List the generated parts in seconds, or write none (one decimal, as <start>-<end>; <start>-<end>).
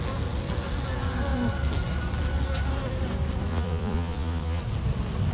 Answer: 3.5-4.6